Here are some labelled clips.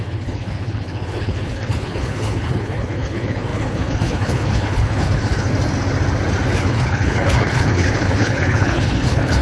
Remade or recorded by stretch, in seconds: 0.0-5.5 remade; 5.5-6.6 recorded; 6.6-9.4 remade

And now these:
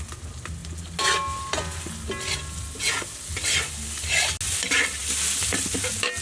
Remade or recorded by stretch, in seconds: 0.0-6.2 recorded

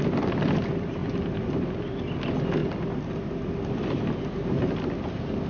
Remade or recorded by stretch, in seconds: 0.0-5.5 recorded

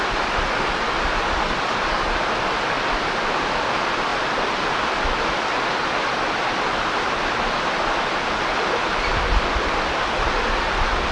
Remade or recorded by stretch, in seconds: 0.0-11.1 recorded

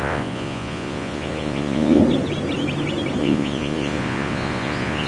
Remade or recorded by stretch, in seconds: 0.0-2.0 remade; 2.0-3.2 recorded; 3.2-5.1 remade

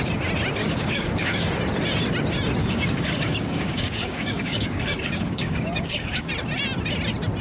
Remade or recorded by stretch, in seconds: 0.0-0.6 recorded; 0.6-1.5 remade; 1.5-2.6 recorded; 2.6-6.3 remade; 6.3-7.4 recorded